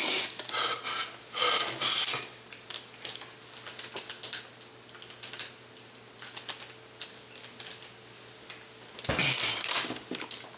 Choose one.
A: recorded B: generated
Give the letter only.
A